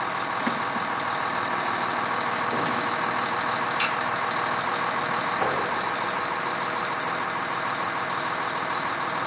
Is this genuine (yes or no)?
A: yes